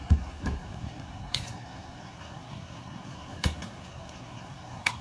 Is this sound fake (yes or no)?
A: yes